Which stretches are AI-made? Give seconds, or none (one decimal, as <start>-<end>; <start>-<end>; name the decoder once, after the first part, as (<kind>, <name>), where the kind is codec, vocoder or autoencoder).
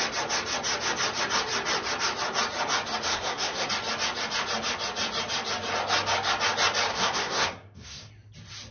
3.1-3.7 (codec, SNAC); 6.9-8.1